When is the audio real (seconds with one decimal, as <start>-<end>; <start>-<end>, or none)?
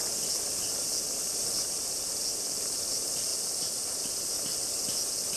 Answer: 0.0-5.4